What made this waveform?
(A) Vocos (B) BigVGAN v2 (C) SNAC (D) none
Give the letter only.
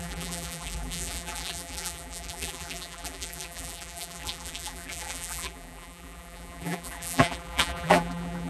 B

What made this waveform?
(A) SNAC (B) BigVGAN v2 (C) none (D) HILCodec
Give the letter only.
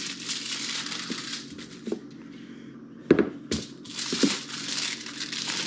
C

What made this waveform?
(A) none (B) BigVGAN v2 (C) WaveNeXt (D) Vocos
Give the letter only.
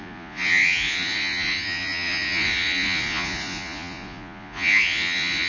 D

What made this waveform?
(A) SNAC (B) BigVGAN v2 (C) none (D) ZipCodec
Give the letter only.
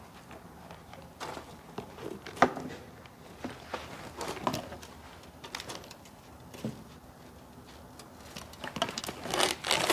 C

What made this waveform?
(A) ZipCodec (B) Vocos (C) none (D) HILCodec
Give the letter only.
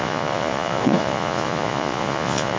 B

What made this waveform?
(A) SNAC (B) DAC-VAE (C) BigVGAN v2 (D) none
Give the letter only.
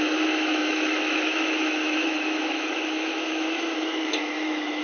B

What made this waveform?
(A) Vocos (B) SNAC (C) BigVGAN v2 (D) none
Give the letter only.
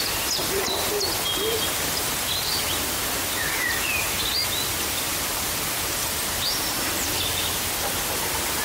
D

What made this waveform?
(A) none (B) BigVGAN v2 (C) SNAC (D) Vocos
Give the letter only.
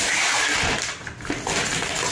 A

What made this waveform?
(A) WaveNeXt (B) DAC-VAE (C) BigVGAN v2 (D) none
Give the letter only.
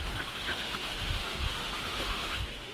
B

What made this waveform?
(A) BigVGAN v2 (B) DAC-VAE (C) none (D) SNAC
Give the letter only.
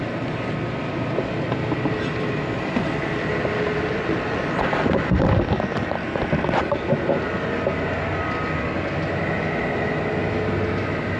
C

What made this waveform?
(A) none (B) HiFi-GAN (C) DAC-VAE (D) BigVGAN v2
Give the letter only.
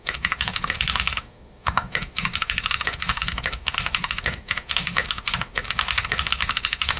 C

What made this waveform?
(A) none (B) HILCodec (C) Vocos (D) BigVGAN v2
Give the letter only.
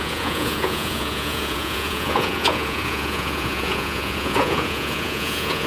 C